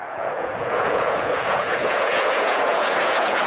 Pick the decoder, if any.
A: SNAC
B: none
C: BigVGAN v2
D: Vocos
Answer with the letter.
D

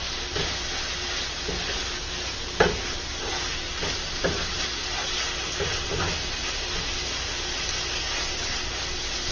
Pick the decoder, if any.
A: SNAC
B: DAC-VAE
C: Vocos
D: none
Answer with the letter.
D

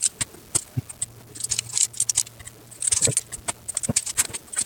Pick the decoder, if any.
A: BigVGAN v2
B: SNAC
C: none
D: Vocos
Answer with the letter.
C